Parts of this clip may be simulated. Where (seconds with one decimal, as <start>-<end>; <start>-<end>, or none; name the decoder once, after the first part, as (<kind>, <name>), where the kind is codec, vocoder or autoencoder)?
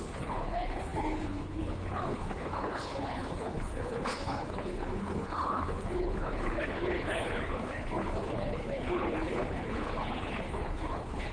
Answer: 0.0-11.3 (codec, HILCodec)